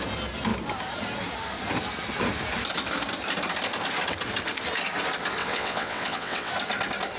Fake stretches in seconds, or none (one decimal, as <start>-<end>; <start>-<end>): 5.4-6.5